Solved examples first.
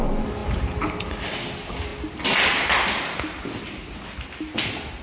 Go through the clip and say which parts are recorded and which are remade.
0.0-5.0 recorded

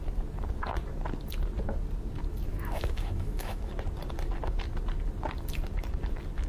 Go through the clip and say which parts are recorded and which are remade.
0.0-2.5 recorded; 2.5-3.7 remade; 3.7-6.5 recorded

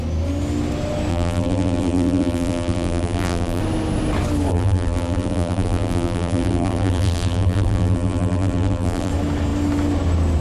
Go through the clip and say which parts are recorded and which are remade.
0.0-1.1 recorded; 1.1-3.6 remade; 3.6-4.5 recorded; 4.5-9.1 remade; 9.1-10.4 recorded

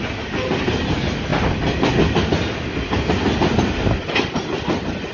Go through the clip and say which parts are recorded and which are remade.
0.0-5.1 recorded

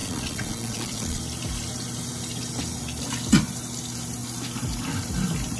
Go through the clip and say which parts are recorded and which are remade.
0.0-1.2 remade; 1.2-5.6 recorded

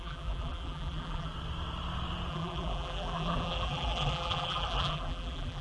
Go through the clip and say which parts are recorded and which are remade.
0.0-1.3 remade; 1.3-2.3 recorded; 2.3-5.6 remade

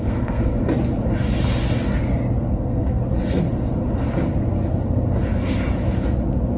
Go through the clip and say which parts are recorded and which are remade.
0.0-0.6 remade; 0.6-2.5 recorded; 2.5-3.0 remade; 3.0-6.6 recorded